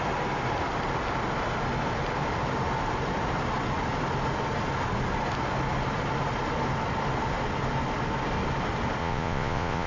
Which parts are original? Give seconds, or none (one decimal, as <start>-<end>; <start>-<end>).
0.0-9.0